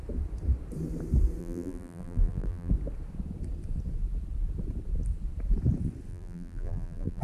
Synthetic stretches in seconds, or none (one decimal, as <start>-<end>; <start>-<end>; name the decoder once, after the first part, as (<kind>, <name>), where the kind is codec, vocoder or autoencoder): 1.4-2.7 (vocoder, BigVGAN v2); 6.1-7.2